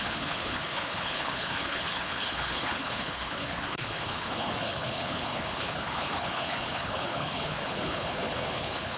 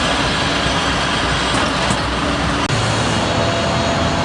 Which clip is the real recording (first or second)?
second